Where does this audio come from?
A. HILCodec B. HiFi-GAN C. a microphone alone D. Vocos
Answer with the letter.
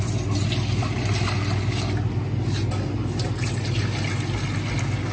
C